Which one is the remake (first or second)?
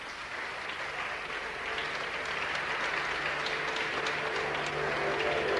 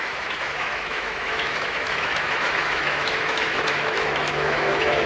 second